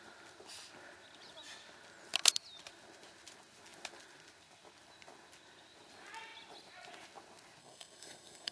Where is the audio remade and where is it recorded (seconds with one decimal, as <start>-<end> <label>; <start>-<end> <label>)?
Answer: 0.0-7.6 recorded; 7.6-8.5 remade